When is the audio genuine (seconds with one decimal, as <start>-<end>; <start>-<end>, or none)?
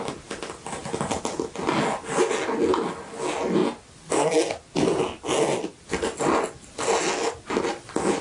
0.0-8.2